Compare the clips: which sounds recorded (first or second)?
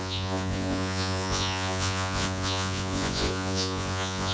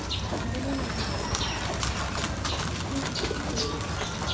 second